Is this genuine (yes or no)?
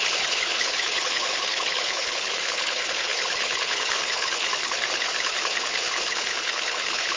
no